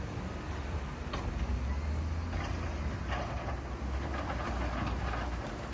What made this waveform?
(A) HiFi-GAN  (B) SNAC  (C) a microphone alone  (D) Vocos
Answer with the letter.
C